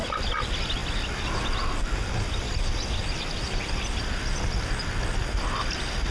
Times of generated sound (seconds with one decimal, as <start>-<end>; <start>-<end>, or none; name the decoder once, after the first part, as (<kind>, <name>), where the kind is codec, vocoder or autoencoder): none